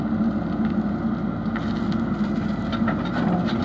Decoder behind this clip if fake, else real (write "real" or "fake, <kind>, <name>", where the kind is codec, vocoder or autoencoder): real